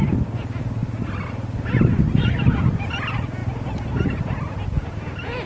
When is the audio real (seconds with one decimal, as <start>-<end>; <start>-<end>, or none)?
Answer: 0.0-5.5